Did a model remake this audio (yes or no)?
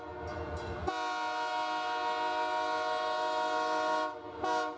no